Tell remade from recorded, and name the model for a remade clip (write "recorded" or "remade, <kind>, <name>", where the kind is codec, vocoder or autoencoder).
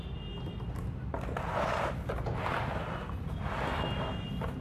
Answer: recorded